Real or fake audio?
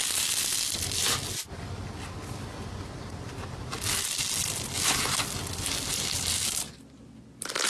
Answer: real